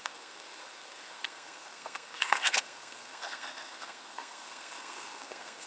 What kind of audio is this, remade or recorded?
remade